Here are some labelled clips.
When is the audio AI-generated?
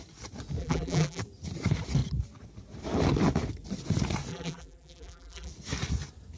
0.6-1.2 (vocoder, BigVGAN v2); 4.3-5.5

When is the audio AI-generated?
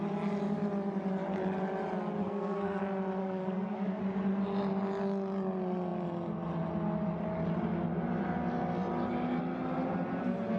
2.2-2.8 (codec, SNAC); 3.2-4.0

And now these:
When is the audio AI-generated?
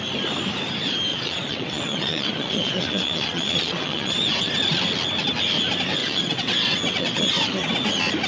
1.1-4.5 (vocoder, WaveNeXt); 6.0-7.7